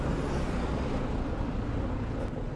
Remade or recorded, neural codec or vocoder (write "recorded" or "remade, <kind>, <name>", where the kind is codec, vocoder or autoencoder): recorded